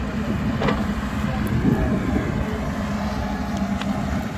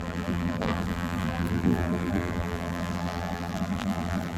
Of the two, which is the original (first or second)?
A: first